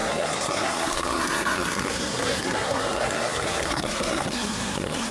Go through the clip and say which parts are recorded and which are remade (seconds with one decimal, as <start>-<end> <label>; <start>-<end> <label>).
0.0-5.1 remade